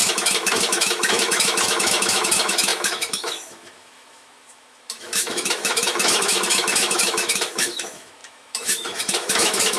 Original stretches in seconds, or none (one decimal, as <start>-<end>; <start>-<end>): none